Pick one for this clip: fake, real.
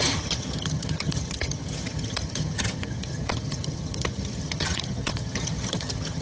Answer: fake